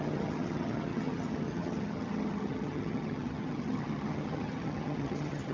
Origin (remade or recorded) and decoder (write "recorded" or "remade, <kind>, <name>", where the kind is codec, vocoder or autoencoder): remade, vocoder, HiFi-GAN